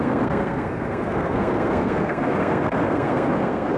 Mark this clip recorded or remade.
remade